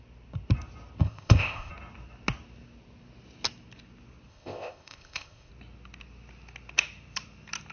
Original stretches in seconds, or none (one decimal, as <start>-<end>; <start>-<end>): 0.0-1.0; 1.7-4.3; 5.5-7.7

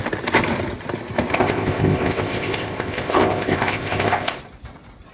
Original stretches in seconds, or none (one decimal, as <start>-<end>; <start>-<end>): 0.0-1.3; 4.4-5.1

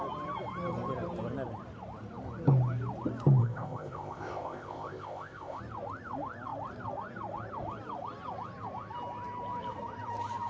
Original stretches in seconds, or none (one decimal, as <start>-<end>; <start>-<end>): 0.0-3.4; 5.6-10.5